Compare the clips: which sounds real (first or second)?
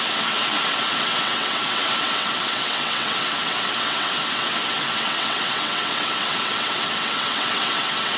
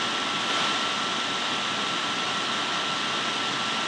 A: second